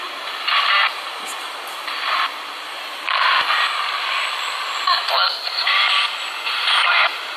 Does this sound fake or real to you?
real